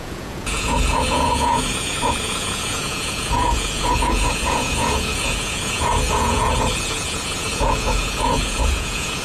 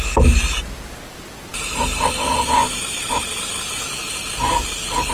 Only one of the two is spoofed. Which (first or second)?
first